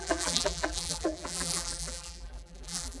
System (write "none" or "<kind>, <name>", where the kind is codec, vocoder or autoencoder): vocoder, BigVGAN v2